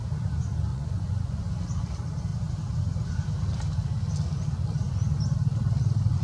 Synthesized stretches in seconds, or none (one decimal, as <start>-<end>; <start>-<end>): 0.7-1.5